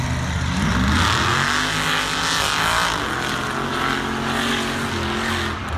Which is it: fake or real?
real